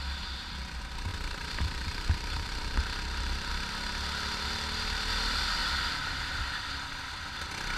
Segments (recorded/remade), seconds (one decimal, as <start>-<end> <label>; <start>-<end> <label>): 0.0-1.1 recorded; 1.1-3.5 remade; 3.5-5.6 recorded; 5.6-6.4 remade; 6.4-7.8 recorded